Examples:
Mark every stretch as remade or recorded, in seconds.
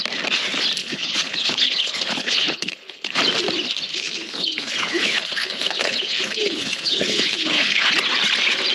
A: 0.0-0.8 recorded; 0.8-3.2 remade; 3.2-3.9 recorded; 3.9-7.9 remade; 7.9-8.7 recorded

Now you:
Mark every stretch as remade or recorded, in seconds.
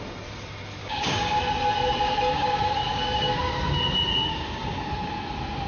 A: 0.0-0.8 recorded; 0.8-1.4 remade; 1.4-2.3 recorded; 2.3-3.4 remade; 3.4-4.3 recorded; 4.3-4.9 remade; 4.9-5.7 recorded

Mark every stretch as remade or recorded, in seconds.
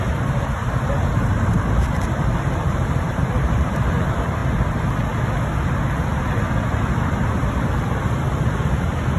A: 0.0-0.6 remade; 0.6-1.1 recorded; 1.1-4.4 remade; 4.4-8.5 recorded; 8.5-9.2 remade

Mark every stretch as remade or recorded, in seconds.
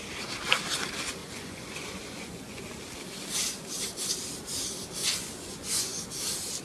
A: 0.0-1.2 recorded; 1.2-2.6 remade; 2.6-5.0 recorded; 5.0-6.0 remade; 6.0-6.6 recorded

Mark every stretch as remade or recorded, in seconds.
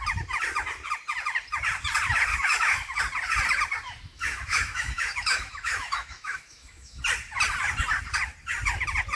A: 0.0-2.3 recorded; 2.3-3.0 remade; 3.0-4.1 recorded; 4.1-7.0 remade; 7.0-9.2 recorded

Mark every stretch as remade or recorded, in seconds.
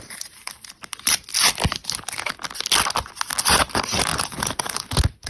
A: 0.0-1.3 remade; 1.3-3.4 recorded; 3.4-5.3 remade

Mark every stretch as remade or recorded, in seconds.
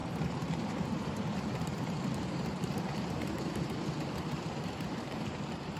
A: 0.0-5.8 remade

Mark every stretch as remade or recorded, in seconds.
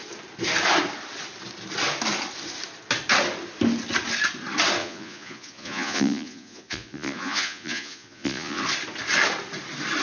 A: 0.0-4.8 recorded; 4.8-8.6 remade; 8.6-10.0 recorded